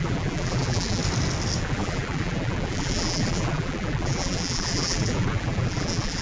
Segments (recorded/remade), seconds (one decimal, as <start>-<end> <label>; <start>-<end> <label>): 0.0-1.0 remade; 1.0-1.6 recorded; 1.6-6.2 remade